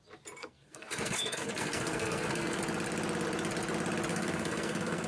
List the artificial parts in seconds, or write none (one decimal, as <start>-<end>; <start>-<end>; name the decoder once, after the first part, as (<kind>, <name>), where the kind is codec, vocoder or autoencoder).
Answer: 0.4-2.6 (codec, SNAC); 4.1-5.1